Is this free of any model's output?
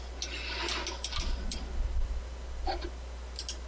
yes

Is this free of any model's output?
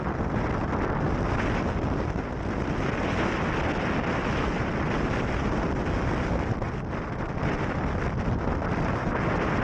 yes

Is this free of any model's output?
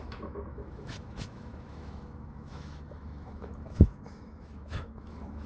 no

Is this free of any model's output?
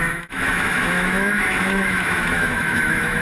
no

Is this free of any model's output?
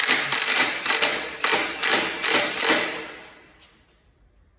yes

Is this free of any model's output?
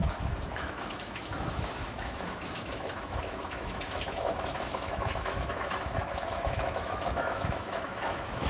no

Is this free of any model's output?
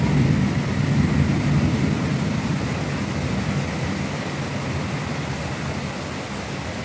yes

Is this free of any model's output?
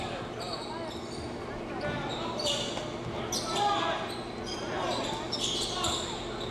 yes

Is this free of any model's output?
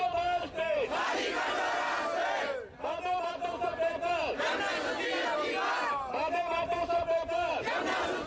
yes